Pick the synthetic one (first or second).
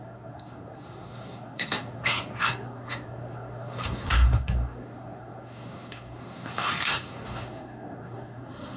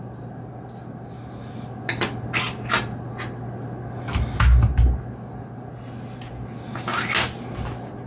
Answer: first